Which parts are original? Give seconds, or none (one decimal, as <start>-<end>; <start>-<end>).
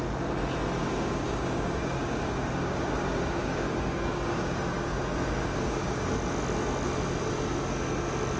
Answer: 0.0-0.8; 5.0-5.4; 6.1-8.4